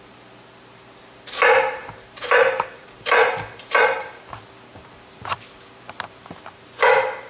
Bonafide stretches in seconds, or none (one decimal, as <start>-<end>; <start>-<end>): 0.0-1.8; 4.2-4.7; 5.5-7.3